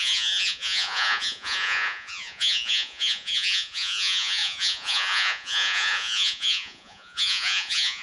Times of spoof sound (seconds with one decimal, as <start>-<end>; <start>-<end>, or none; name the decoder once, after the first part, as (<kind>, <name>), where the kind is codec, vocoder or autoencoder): 0.0-8.0 (vocoder, Vocos)

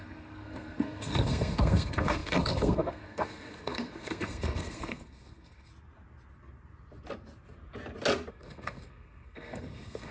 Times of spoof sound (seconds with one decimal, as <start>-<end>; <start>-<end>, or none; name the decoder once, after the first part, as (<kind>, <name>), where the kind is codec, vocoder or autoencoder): 0.0-5.7 (codec, SNAC); 8.3-10.1

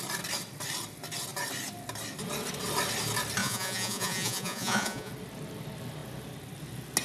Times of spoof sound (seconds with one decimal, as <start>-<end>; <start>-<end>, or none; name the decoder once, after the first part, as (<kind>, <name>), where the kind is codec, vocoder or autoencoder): 3.4-5.1 (vocoder, Vocos)

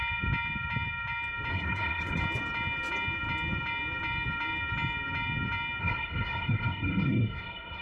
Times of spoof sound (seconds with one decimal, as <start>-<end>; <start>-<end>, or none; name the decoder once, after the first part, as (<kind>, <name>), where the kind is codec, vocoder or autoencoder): 1.5-2.2 (codec, SNAC); 5.8-7.8

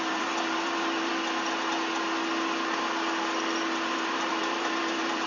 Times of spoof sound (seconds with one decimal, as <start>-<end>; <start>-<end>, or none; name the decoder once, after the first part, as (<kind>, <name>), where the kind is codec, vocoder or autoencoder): 0.0-1.1 (vocoder, BigVGAN v2); 4.3-5.3

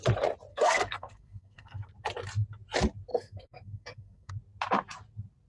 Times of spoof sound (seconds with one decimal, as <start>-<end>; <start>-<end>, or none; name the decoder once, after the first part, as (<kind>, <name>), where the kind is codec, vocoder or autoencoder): 0.5-1.9 (codec, SNAC); 3.1-4.3

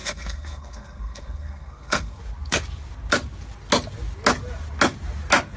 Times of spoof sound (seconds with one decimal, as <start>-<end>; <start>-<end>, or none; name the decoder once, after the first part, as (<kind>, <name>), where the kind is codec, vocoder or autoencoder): 0.0-2.2 (codec, SNAC)